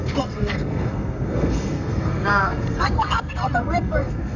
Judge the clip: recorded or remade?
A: remade